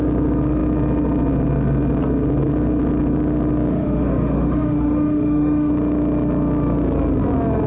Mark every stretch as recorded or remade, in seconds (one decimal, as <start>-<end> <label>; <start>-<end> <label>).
0.0-3.7 recorded; 3.7-5.7 remade; 5.7-7.7 recorded